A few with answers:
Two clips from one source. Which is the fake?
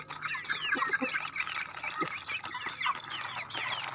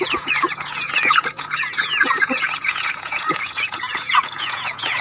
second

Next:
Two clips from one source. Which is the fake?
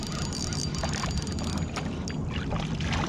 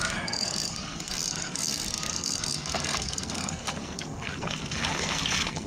second